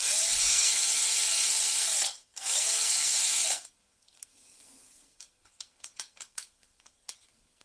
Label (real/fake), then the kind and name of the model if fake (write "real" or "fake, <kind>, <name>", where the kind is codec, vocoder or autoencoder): fake, codec, SNAC